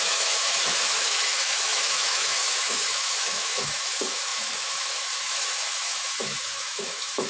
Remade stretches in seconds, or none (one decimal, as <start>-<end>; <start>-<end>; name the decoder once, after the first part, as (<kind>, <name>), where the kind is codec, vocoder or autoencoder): 0.0-7.3 (autoencoder, DAC-VAE)